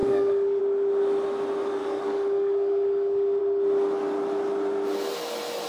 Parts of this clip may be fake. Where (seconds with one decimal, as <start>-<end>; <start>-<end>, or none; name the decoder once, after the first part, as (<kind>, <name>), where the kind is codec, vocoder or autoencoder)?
0.0-0.6 (codec, DAC); 1.8-3.4